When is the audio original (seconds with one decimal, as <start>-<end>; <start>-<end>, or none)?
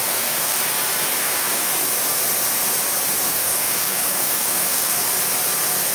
0.6-1.2; 1.7-3.3; 5.0-5.9